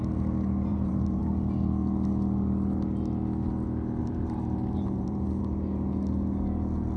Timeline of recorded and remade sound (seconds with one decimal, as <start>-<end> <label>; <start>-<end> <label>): 0.0-0.7 recorded; 0.7-1.2 remade; 1.2-4.0 recorded; 4.0-5.4 remade; 5.4-7.0 recorded